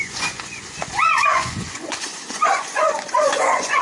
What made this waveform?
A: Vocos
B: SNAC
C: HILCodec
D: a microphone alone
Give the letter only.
A